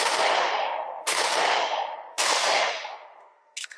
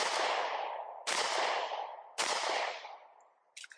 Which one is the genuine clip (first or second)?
second